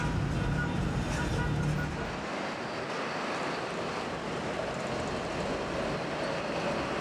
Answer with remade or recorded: recorded